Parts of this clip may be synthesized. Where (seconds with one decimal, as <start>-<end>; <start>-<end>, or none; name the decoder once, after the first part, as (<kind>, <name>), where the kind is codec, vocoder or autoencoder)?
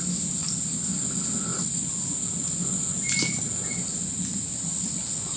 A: 0.4-1.1 (vocoder, BigVGAN v2)